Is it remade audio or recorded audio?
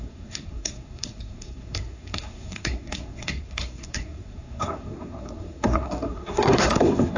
remade